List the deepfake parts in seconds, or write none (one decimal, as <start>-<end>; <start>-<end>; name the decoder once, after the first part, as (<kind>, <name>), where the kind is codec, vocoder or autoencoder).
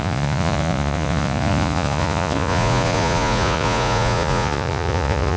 0.0-5.4 (vocoder, Vocos)